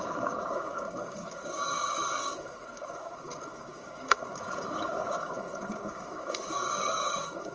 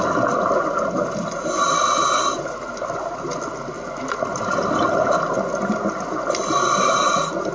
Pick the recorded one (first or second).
second